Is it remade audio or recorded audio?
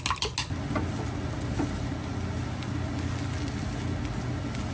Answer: recorded